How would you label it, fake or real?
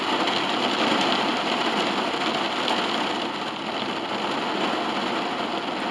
real